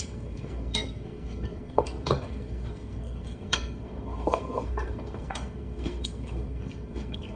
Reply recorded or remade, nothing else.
remade